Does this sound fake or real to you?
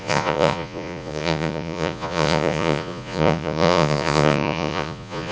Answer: fake